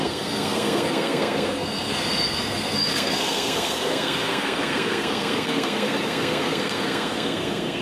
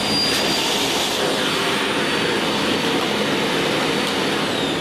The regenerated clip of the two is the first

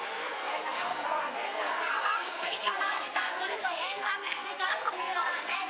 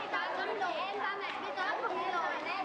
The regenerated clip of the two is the first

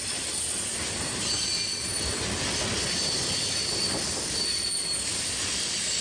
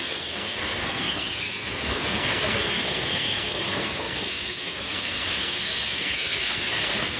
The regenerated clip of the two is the second